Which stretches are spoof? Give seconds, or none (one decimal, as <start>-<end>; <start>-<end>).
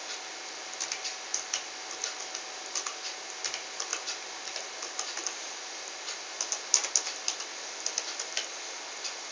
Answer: none